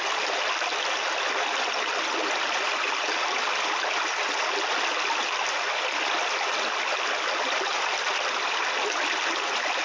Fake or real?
real